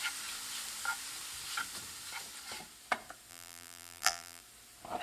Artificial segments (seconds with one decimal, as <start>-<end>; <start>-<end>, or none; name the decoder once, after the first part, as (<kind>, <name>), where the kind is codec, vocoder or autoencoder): 3.3-4.4 (vocoder, BigVGAN v2)